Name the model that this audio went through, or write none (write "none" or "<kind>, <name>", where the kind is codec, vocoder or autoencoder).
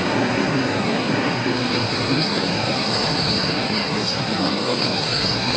codec, SNAC